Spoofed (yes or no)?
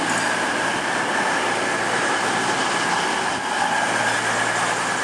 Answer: no